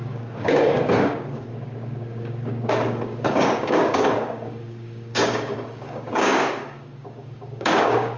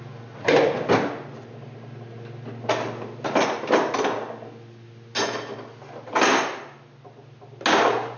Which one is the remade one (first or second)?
first